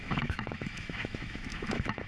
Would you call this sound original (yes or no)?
no